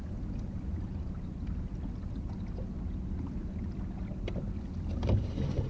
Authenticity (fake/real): real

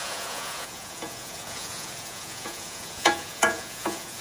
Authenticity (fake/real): fake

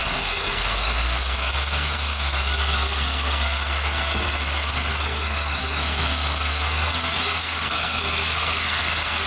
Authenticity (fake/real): fake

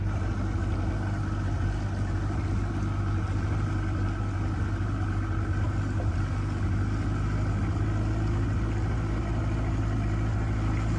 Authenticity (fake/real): real